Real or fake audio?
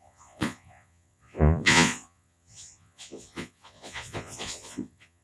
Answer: fake